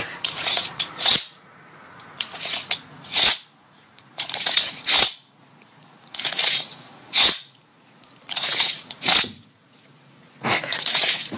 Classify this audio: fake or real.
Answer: fake